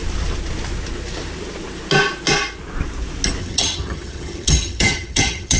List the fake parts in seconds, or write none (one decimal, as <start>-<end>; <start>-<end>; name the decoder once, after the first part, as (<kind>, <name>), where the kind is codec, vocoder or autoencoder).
3.4-5.6 (vocoder, HiFi-GAN)